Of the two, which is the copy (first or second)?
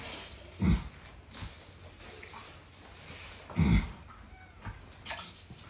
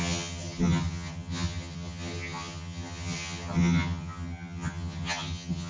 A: second